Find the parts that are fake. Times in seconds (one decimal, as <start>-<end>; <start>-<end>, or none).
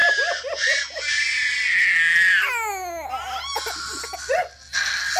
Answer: none